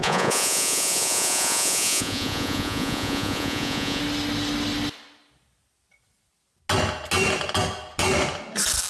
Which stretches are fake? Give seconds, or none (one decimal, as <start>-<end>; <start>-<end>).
0.0-4.0